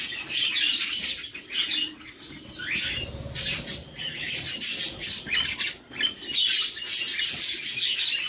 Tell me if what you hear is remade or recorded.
recorded